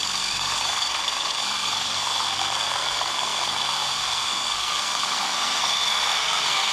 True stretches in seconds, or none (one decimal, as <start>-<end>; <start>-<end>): none